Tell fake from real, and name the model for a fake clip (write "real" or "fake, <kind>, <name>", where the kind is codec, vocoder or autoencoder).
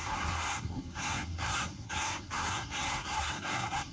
fake, codec, SNAC